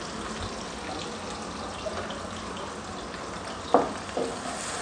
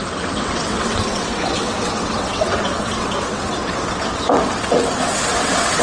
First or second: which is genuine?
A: first